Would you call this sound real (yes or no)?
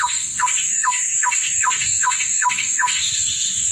no